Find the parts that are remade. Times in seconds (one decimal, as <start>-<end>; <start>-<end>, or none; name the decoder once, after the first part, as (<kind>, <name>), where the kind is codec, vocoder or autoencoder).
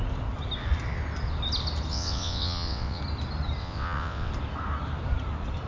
1.9-3.0 (vocoder, WaveNeXt); 3.6-4.3